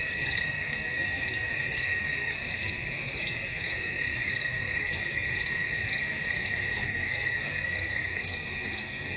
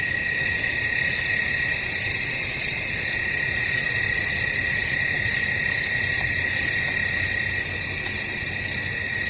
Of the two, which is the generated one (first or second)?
first